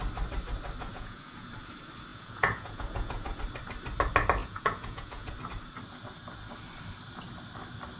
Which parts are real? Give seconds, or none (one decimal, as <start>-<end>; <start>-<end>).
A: 0.0-0.9; 1.5-2.1; 3.4-4.4; 5.3-8.0